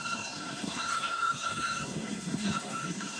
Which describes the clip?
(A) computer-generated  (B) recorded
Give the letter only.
A